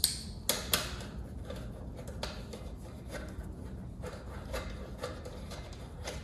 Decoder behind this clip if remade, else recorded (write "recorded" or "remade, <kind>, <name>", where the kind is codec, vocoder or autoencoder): recorded